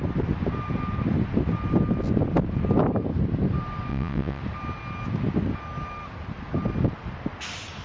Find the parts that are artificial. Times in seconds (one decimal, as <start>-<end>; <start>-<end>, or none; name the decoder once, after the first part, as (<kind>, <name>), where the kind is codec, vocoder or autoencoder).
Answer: 3.9-4.4 (vocoder, WaveNeXt)